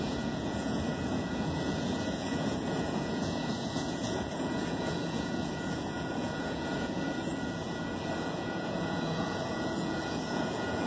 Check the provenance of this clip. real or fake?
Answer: fake